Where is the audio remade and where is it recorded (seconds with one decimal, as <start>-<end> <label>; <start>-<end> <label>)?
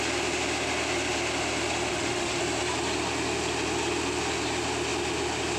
0.0-1.9 recorded; 1.9-2.4 remade; 2.4-5.6 recorded